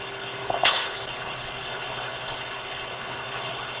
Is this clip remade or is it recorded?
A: remade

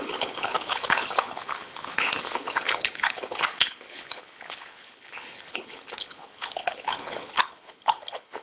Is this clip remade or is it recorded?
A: remade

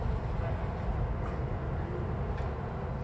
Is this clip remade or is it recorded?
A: recorded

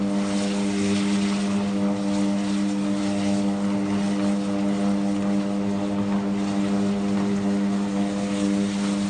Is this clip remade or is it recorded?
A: recorded